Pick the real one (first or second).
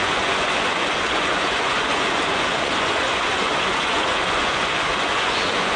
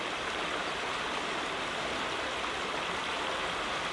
second